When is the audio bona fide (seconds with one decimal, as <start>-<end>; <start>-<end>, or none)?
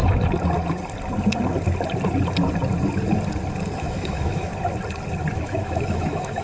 0.0-3.8; 4.5-5.3